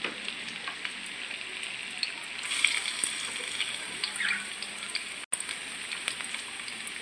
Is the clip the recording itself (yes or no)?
yes